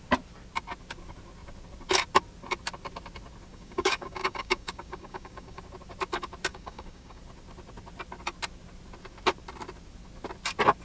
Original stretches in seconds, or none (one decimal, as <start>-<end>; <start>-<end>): 0.0-3.5; 5.6-6.5; 7.2-10.8